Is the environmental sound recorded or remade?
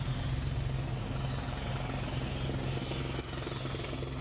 recorded